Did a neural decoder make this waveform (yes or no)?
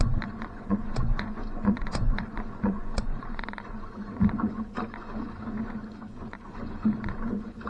yes